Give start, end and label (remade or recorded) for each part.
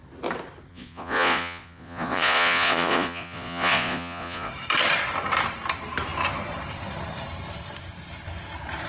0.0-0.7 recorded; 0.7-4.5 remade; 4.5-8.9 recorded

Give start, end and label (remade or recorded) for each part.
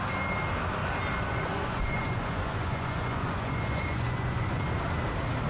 0.0-1.3 recorded; 1.3-4.6 remade; 4.6-5.5 recorded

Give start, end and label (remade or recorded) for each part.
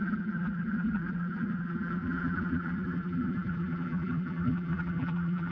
0.0-5.5 remade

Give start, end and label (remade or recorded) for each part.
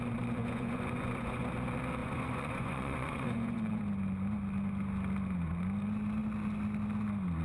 0.0-0.4 recorded; 0.4-1.4 remade; 1.4-2.0 recorded; 2.0-3.8 remade; 3.8-7.4 recorded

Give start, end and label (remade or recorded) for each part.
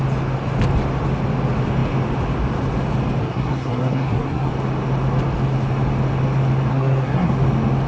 0.0-3.2 recorded; 3.2-4.5 remade; 4.5-6.7 recorded; 6.7-7.3 remade; 7.3-7.9 recorded